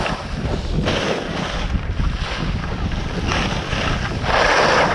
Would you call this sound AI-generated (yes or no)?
no